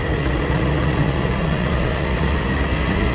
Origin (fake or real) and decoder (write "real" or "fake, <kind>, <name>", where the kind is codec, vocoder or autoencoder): fake, vocoder, Vocos